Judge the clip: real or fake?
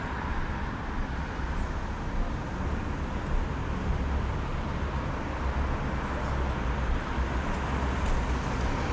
real